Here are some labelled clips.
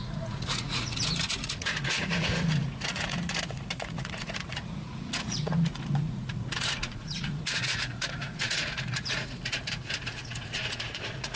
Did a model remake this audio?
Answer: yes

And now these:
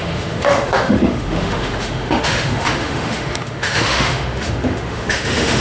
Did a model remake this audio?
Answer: yes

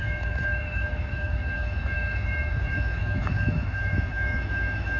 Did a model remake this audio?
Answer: yes